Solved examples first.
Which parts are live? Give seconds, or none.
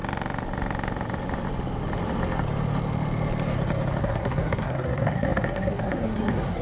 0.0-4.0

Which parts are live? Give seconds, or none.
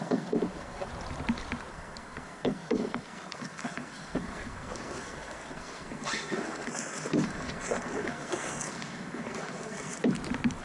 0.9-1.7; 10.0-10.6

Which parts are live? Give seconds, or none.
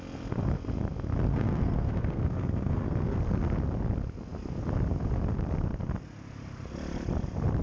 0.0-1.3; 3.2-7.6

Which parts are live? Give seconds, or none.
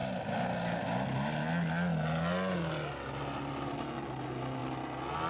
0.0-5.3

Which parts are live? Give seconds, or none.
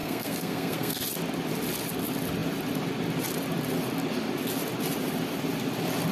1.0-6.1